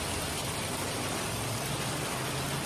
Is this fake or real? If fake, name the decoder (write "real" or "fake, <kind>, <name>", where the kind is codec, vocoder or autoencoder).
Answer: real